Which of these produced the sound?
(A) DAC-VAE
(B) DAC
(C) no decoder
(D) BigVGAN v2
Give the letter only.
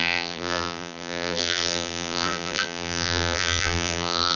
D